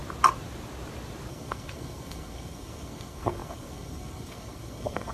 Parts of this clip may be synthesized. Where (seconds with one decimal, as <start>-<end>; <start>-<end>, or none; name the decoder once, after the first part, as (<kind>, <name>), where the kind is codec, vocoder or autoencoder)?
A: 1.3-5.1 (codec, SNAC)